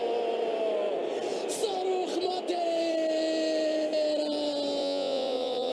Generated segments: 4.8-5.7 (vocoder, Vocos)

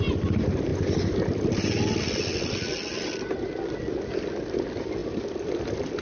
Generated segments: none

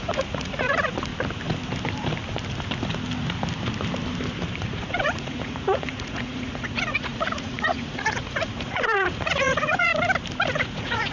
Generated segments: 0.0-1.1 (vocoder, Vocos); 4.6-9.9; 10.5-11.1